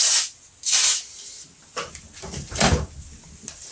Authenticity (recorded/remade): recorded